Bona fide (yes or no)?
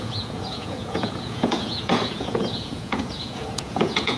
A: no